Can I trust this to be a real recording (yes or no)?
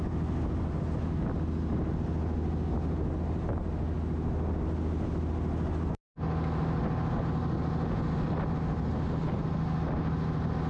yes